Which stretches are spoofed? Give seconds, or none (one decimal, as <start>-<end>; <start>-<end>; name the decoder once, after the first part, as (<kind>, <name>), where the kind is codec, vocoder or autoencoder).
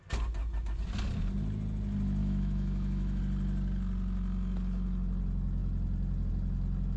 2.2-3.2 (autoencoder, DAC-VAE)